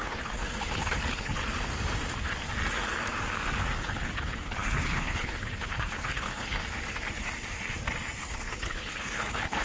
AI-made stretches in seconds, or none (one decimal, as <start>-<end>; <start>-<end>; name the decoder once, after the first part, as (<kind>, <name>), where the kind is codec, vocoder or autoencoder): 0.0-1.4 (codec, HILCodec); 3.8-6.6; 8.2-9.6